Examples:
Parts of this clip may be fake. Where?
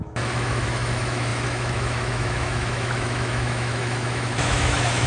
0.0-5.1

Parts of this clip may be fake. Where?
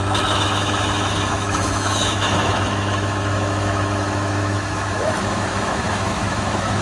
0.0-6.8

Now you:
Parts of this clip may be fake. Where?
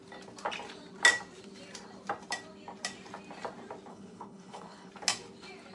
3.9-4.9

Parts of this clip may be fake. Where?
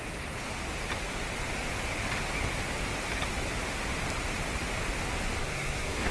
5.4-6.1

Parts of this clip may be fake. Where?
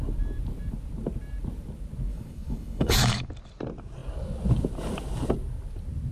2.1-3.3